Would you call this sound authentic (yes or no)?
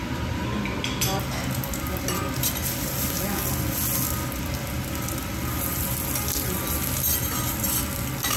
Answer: yes